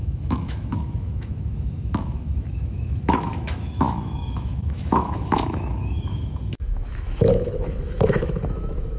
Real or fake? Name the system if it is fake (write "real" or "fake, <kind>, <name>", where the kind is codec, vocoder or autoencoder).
fake, autoencoder, DAC-VAE